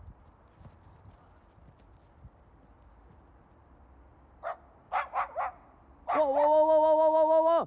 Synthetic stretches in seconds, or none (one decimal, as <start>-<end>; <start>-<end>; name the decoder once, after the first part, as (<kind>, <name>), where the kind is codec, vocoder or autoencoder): none